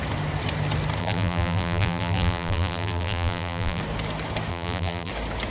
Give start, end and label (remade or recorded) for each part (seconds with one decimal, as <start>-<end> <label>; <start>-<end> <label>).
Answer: 0.0-1.0 recorded; 1.0-3.8 remade; 3.8-4.5 recorded; 4.5-5.1 remade; 5.1-5.5 recorded